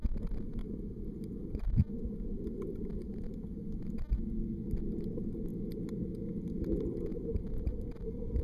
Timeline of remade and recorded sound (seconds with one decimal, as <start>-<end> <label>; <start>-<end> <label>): 0.0-0.6 recorded; 0.6-1.7 remade; 1.7-8.4 recorded